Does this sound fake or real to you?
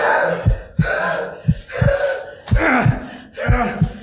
real